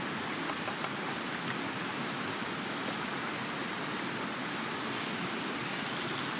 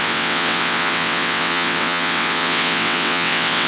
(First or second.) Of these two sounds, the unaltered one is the first